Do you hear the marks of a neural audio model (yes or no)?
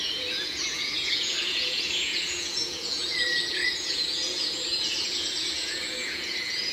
yes